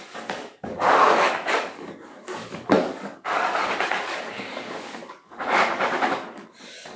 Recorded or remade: remade